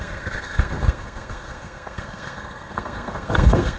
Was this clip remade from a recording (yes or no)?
yes